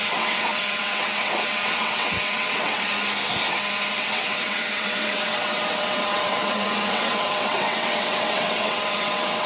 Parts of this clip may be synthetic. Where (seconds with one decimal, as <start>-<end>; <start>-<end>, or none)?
0.0-2.9; 3.9-9.5